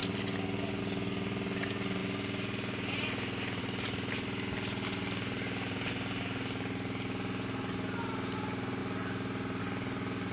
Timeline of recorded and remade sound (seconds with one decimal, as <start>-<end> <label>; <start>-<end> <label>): 0.0-10.3 recorded